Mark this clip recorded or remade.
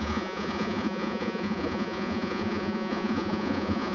remade